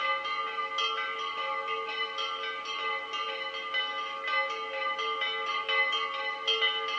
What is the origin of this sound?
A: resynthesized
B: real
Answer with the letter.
B